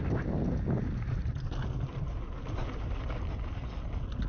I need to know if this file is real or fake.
real